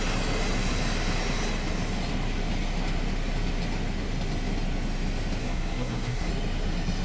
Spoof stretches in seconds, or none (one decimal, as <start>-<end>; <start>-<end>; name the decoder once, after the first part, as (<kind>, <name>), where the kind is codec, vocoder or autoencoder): 5.4-6.3 (codec, SNAC)